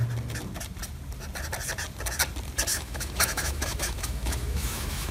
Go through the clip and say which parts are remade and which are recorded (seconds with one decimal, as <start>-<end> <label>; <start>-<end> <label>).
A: 0.0-2.7 recorded; 2.7-5.1 remade